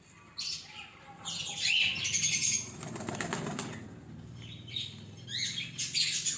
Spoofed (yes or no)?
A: no